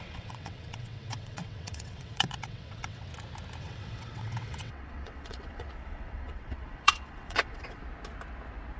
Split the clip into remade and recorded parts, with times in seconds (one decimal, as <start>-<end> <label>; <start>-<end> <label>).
0.0-3.1 remade; 3.1-3.6 recorded; 3.6-7.8 remade; 7.8-8.8 recorded